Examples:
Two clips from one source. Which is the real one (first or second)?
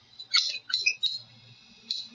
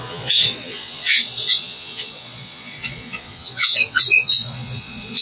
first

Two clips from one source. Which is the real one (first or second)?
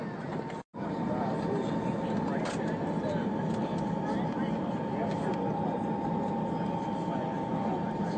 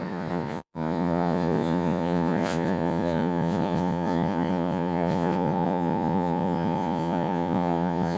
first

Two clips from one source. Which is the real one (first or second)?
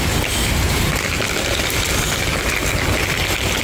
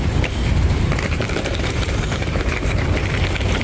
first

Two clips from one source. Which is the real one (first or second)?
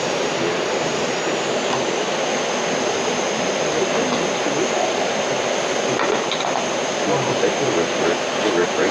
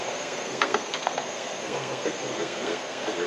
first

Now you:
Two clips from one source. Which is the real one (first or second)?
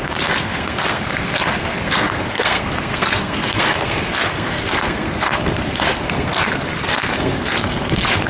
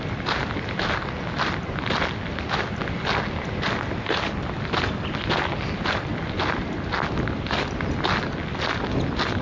second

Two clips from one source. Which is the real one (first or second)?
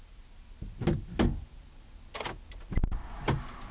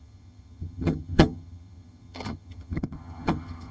first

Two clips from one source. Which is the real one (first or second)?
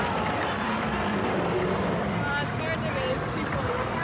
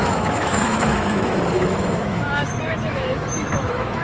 first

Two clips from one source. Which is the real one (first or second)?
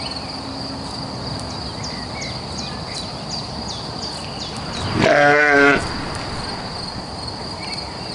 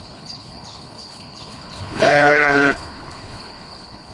first